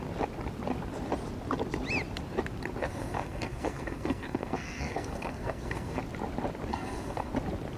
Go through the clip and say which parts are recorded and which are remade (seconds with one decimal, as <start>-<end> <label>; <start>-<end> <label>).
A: 0.0-2.8 recorded; 2.8-6.0 remade; 6.0-6.7 recorded; 6.7-7.3 remade; 7.3-7.8 recorded